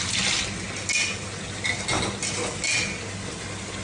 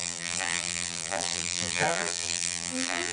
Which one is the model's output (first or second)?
second